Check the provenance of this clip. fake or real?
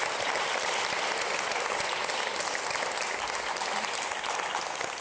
real